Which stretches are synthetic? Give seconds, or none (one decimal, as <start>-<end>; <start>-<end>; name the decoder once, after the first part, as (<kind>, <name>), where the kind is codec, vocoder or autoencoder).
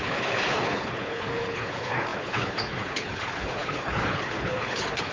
0.0-5.1 (codec, HILCodec)